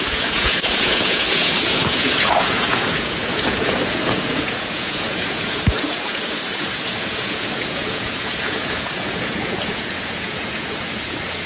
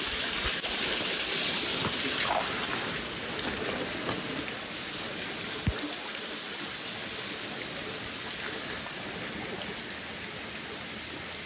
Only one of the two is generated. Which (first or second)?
first